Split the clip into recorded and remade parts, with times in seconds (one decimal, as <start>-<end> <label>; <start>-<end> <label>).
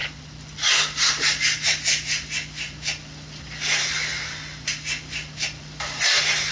0.0-6.5 recorded